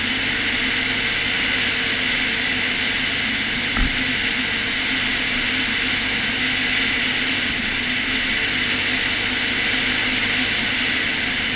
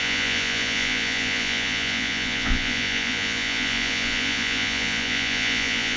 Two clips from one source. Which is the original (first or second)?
first